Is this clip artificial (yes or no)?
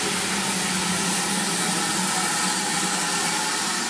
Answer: no